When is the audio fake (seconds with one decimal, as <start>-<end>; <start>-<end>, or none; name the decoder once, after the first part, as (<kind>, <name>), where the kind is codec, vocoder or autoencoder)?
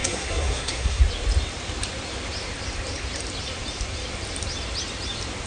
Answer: 0.0-1.0 (codec, SNAC)